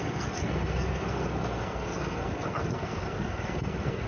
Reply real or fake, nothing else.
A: fake